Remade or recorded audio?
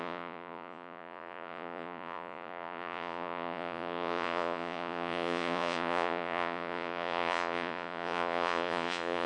remade